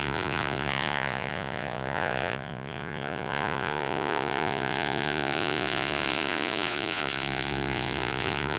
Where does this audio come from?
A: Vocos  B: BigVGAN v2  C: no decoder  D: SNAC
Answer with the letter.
A